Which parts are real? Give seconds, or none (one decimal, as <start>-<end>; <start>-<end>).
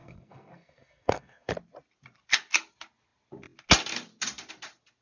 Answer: 1.5-5.0